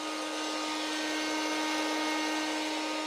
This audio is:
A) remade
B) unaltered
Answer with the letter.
B